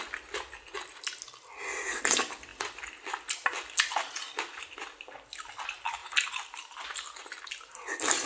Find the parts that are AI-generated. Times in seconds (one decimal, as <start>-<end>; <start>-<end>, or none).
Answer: none